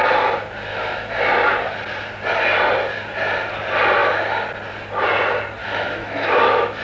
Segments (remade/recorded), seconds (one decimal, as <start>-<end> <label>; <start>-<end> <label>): 0.0-0.7 recorded; 0.7-1.3 remade; 1.3-5.6 recorded; 5.6-6.8 remade